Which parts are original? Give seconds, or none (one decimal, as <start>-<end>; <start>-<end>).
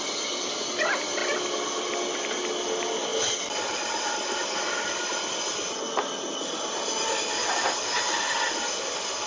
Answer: 0.0-9.3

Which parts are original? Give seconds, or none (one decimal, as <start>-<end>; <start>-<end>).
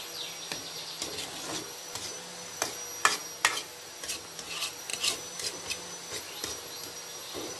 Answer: 0.0-7.6